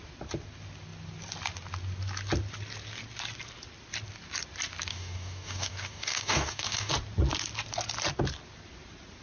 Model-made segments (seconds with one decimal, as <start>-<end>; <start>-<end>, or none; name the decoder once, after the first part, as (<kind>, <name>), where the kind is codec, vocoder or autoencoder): 4.9-6.9 (codec, DAC)